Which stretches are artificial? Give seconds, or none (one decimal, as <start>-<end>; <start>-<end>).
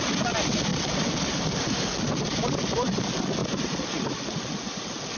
none